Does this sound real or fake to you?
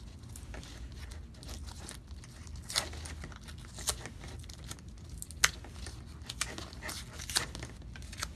real